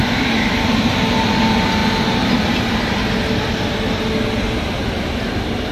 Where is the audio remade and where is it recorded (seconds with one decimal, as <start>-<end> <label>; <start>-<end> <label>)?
0.0-5.7 recorded